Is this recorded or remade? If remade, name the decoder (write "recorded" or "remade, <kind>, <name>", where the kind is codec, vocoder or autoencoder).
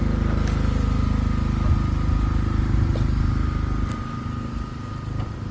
recorded